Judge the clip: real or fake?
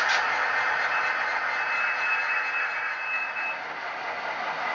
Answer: real